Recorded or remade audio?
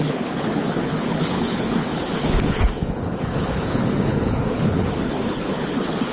remade